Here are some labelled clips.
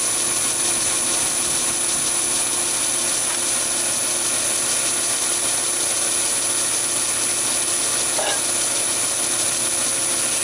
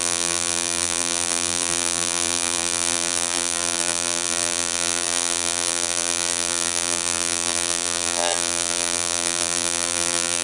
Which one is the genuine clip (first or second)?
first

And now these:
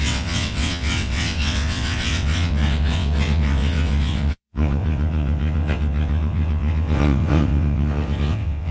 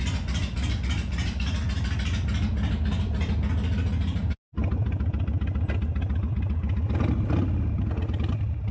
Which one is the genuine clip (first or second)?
second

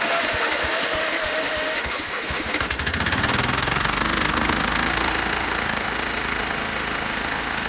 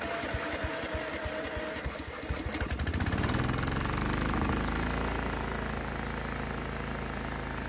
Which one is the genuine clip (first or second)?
second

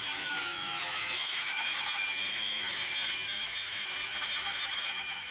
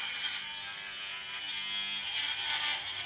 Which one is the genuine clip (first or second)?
second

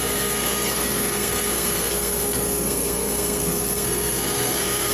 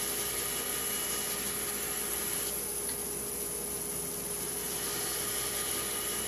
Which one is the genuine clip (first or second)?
second